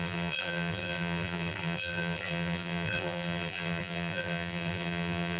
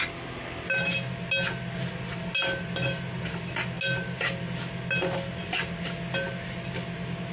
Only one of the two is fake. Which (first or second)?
first